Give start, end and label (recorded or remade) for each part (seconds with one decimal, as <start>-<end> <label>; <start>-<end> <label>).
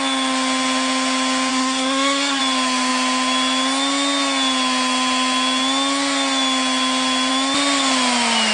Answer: 0.0-1.5 recorded; 1.5-2.4 remade; 2.4-8.5 recorded